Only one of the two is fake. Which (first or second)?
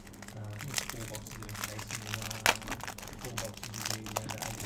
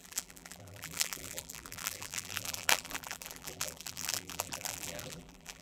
second